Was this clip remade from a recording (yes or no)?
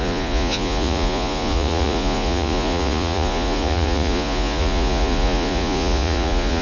yes